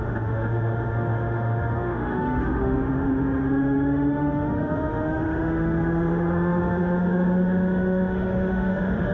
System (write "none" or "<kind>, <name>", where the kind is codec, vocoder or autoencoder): autoencoder, DAC-VAE